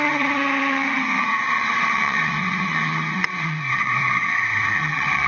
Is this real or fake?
fake